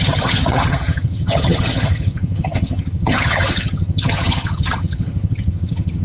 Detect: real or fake fake